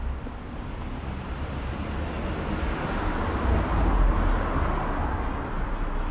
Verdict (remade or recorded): recorded